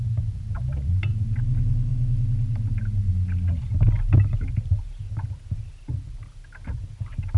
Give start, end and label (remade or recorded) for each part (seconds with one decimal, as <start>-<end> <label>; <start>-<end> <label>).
0.0-7.4 recorded